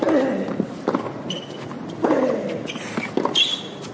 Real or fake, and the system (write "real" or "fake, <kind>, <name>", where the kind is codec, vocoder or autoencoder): real